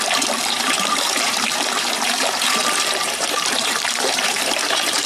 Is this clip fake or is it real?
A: fake